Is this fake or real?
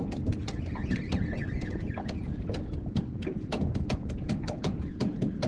fake